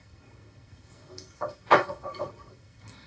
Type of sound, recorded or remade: remade